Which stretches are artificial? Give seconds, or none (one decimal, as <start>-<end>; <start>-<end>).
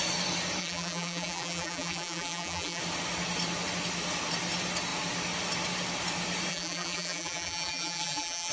0.6-2.8; 6.5-8.5